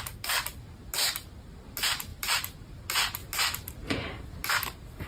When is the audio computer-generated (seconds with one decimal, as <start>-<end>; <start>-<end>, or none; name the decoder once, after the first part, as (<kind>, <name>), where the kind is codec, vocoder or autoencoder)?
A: 2.1-2.8 (vocoder, BigVGAN v2)